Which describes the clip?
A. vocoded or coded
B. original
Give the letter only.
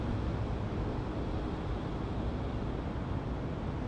B